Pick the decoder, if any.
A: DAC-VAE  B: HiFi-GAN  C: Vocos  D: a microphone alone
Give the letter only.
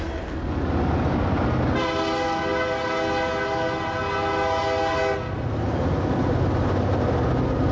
D